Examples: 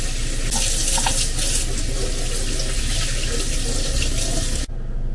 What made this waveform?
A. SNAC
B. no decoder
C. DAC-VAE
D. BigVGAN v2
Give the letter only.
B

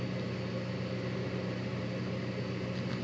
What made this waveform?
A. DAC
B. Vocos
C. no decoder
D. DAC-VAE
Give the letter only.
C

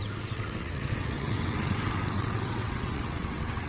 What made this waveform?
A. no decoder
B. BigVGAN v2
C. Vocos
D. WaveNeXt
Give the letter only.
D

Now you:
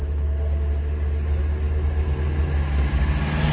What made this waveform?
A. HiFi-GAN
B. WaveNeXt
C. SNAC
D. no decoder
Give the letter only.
D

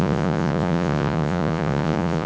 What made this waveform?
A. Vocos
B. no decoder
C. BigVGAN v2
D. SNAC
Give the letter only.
A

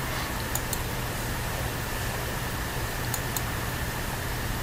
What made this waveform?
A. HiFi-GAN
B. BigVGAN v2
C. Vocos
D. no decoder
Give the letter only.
B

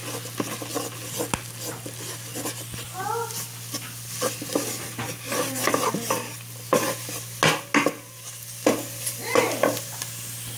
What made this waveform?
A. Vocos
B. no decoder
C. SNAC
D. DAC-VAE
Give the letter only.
B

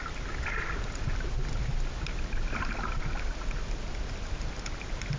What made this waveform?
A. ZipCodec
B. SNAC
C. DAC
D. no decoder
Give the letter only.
D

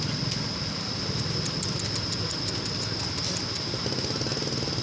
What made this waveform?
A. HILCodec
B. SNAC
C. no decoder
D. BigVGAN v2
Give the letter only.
C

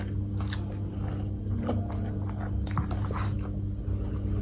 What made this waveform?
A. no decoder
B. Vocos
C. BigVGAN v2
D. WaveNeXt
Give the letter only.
A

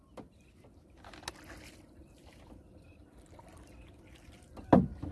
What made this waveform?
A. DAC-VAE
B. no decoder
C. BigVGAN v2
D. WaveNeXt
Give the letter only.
B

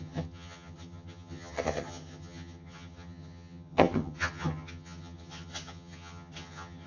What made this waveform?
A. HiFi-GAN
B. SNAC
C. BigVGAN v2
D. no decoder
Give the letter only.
A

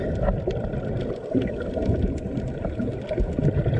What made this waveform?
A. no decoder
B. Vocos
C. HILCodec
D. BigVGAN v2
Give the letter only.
A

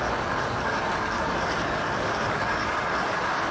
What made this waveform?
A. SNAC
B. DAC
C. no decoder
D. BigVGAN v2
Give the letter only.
B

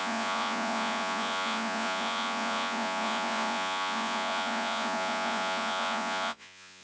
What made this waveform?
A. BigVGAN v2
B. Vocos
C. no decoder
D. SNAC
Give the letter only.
B